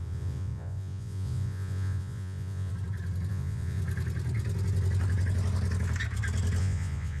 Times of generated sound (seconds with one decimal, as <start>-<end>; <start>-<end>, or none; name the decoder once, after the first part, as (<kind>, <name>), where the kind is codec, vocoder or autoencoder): 0.0-2.7 (vocoder, Vocos); 3.3-3.8; 6.6-7.2